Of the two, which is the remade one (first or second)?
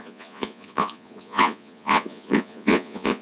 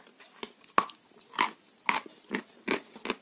first